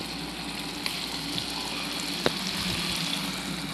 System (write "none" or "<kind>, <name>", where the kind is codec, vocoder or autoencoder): none